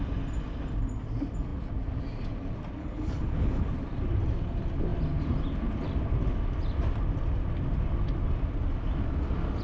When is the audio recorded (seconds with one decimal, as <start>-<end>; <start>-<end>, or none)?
0.0-2.8; 3.7-9.6

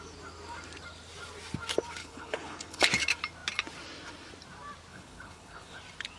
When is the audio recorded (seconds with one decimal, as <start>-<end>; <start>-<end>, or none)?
0.0-2.0; 2.9-4.9; 5.8-6.2